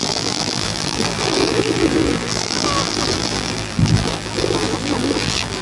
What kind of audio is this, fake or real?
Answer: fake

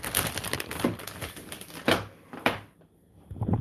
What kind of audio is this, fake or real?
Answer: real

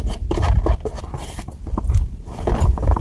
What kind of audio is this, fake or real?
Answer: fake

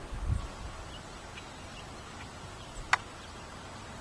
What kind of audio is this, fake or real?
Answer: real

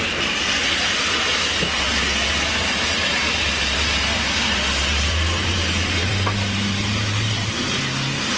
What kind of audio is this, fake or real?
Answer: fake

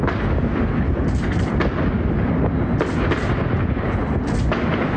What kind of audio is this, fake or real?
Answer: real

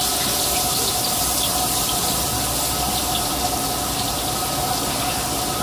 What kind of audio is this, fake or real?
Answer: real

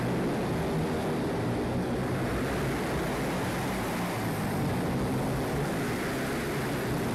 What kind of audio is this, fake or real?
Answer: real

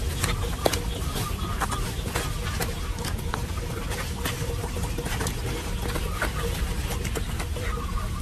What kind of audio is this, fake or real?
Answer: real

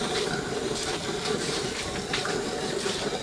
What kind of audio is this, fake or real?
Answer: fake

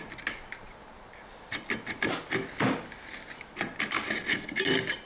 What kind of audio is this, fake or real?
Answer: real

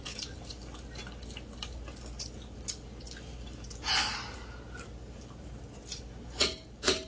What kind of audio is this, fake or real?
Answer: real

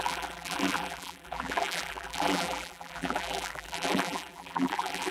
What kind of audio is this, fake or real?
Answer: fake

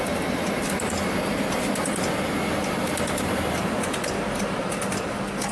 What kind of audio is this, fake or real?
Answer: fake